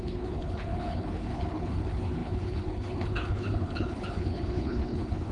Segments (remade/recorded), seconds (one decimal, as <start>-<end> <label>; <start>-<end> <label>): 0.0-5.3 remade